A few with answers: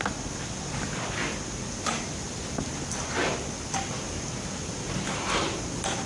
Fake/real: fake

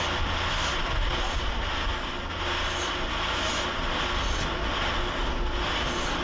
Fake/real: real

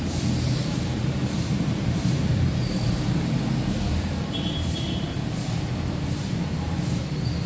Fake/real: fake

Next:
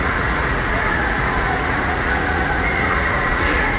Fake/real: fake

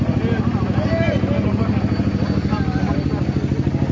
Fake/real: real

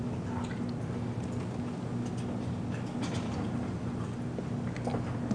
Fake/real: real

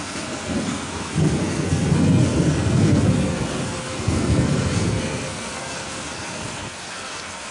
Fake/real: fake